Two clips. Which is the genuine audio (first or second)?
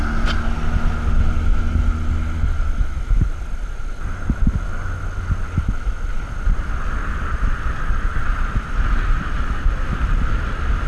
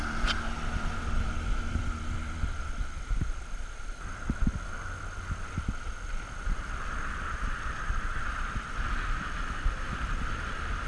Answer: first